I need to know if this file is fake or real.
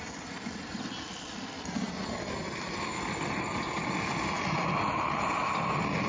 real